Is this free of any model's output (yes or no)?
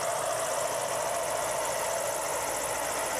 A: yes